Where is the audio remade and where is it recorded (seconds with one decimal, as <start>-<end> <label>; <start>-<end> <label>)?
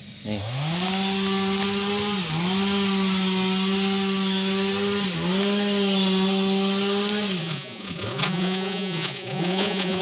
0.0-7.4 recorded; 7.4-10.0 remade